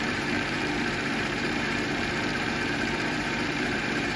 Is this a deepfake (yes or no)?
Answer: yes